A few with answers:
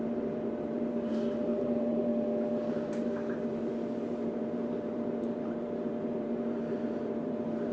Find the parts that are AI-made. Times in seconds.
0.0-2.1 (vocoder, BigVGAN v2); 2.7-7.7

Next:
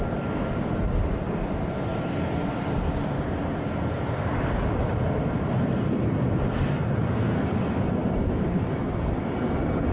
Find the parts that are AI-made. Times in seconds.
1.9-7.0 (vocoder, BigVGAN v2); 8.0-9.2